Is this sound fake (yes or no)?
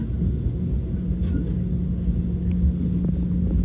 no